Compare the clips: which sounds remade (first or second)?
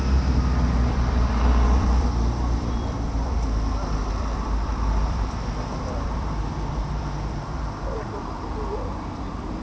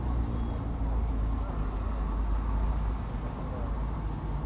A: first